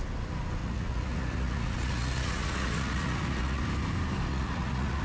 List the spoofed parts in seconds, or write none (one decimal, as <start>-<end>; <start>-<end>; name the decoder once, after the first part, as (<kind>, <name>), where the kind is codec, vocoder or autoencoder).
0.6-3.6 (vocoder, Vocos); 4.3-5.0